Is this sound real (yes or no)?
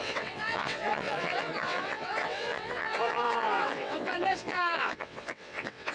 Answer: no